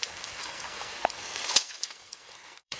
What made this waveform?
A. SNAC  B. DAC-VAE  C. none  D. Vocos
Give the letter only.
A